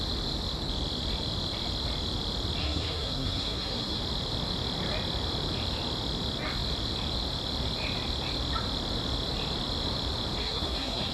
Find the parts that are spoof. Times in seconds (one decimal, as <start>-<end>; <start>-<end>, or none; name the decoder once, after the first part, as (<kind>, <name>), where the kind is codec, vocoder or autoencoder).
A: 2.6-4.0 (codec, SNAC); 10.4-11.1